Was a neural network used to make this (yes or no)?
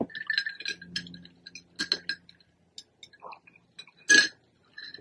no